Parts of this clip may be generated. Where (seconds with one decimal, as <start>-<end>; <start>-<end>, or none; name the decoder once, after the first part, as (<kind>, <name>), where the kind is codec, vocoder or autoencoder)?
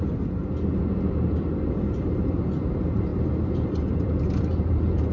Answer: 0.0-0.4 (vocoder, BigVGAN v2); 1.7-5.1